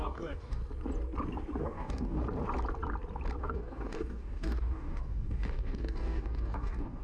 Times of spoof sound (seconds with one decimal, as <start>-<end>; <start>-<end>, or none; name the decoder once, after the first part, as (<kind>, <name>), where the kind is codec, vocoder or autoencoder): 0.0-0.6 (codec, DAC); 1.6-2.2; 3.4-7.0